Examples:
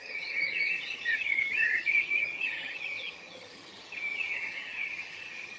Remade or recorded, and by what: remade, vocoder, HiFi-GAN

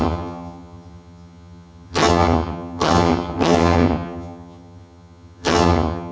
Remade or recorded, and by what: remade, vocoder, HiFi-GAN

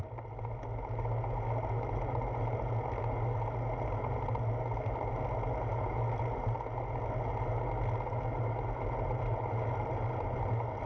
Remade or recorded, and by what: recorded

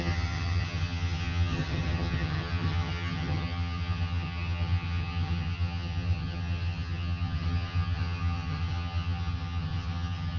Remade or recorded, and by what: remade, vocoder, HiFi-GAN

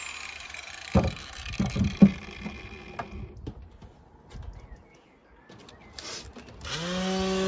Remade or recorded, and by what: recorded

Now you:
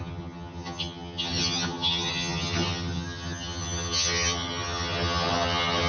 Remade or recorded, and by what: remade, vocoder, HiFi-GAN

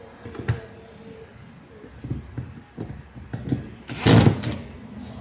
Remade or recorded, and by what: recorded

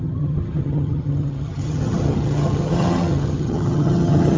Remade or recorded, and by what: remade, vocoder, HiFi-GAN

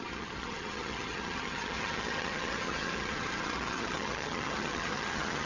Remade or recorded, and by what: remade, vocoder, HiFi-GAN